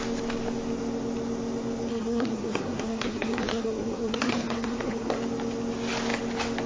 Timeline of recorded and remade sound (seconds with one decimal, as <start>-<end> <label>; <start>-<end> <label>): 0.0-1.9 recorded; 1.9-5.1 remade; 5.1-6.7 recorded